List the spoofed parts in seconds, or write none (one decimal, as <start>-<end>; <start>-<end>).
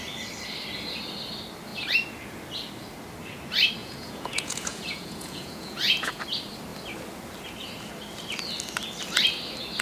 3.8-6.2